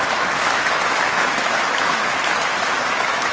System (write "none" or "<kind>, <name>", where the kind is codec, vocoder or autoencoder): autoencoder, DAC-VAE